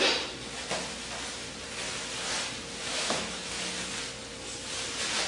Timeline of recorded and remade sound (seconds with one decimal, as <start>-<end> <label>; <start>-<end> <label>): 0.0-2.8 recorded; 2.8-3.4 remade; 3.4-5.3 recorded